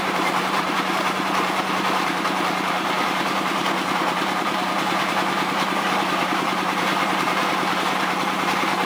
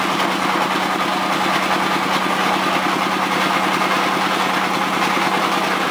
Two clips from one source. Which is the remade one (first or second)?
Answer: first